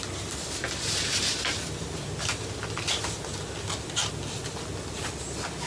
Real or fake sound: real